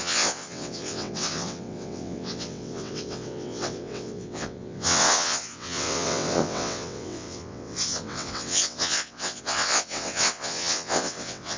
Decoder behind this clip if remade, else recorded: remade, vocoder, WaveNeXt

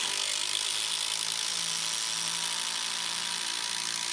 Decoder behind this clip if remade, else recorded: recorded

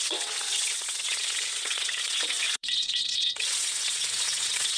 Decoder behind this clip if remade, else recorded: remade, vocoder, WaveNeXt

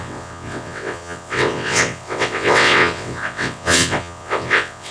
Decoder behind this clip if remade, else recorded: remade, vocoder, WaveNeXt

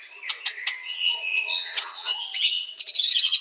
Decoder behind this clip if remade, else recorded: remade, vocoder, WaveNeXt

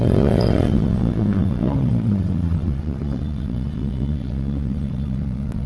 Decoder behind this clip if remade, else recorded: remade, vocoder, WaveNeXt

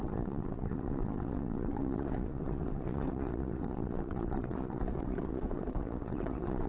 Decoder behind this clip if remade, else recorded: remade, vocoder, WaveNeXt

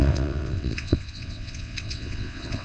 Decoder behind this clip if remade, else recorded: remade, vocoder, WaveNeXt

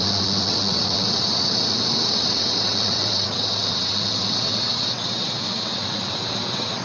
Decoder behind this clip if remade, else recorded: remade, vocoder, WaveNeXt